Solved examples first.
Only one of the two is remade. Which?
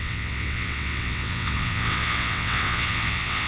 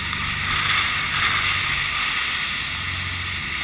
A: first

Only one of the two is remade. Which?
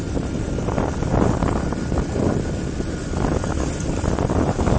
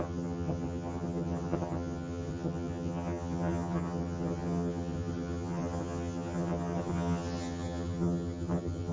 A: second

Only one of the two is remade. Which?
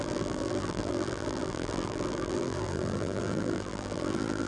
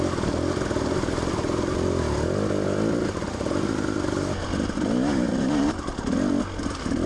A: first